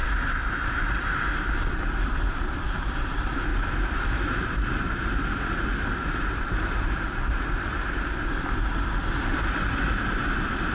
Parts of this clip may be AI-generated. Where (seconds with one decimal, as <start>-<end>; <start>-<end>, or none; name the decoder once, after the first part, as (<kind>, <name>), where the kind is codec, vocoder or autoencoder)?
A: 1.4-3.5 (vocoder, BigVGAN v2); 4.4-10.7